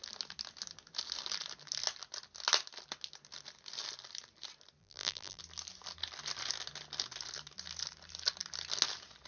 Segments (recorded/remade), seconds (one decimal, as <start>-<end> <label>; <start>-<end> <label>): 0.0-4.8 recorded; 4.8-5.4 remade; 5.4-9.3 recorded